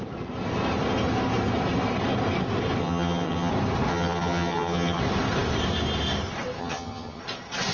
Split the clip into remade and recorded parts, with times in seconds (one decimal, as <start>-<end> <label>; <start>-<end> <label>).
0.0-2.8 recorded; 2.8-3.5 remade; 3.5-3.9 recorded; 3.9-5.0 remade; 5.0-6.6 recorded; 6.6-7.2 remade; 7.2-7.7 recorded